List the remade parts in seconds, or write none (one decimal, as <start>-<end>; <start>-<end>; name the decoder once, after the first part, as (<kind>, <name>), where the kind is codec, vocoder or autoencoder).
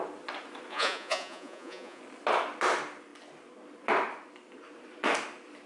0.7-2.0 (vocoder, Vocos)